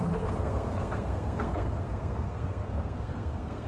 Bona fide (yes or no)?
no